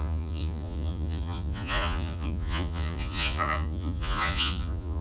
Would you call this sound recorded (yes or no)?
no